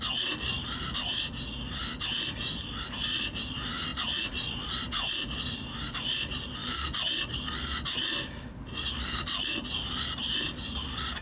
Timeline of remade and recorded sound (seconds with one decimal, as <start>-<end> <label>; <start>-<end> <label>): 0.0-11.2 recorded